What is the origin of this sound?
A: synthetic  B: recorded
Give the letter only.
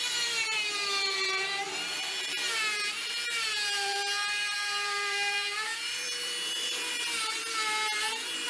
A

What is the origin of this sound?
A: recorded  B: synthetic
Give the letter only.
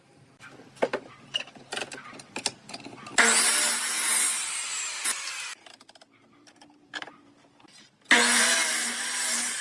B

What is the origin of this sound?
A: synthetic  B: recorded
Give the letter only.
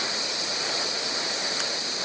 A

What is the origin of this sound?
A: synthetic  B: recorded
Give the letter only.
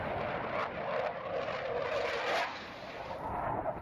B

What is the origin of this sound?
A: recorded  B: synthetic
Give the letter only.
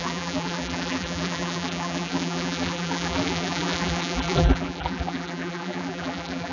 B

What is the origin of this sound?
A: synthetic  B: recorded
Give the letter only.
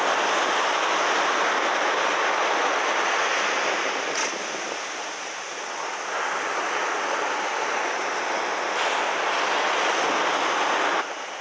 B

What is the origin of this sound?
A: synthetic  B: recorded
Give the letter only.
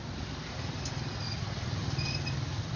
B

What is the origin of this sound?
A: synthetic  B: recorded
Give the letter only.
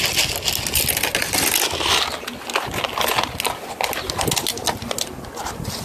B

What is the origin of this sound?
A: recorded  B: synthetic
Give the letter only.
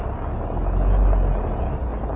A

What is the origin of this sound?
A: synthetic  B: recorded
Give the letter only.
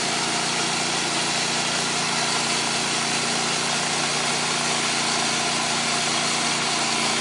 B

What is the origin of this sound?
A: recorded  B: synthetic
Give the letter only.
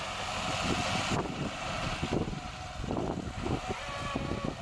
A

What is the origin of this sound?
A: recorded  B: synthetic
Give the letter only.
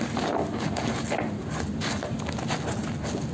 A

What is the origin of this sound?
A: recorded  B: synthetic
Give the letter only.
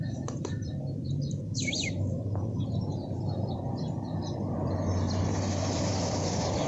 B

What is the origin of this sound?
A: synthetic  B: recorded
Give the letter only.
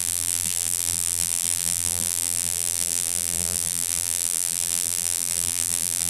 A